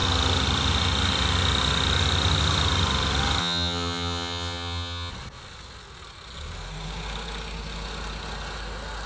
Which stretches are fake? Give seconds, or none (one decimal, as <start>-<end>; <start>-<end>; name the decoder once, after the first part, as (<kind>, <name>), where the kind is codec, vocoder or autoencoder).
3.4-5.1 (vocoder, HiFi-GAN)